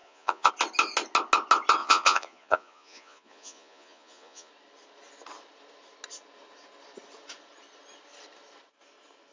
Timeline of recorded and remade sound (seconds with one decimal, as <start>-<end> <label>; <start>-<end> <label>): 0.0-0.5 remade; 0.5-1.8 recorded; 1.8-4.5 remade; 4.5-9.3 recorded